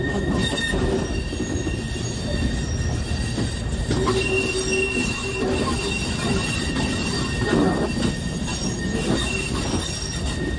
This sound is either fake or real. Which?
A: real